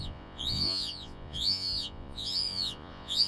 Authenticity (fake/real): fake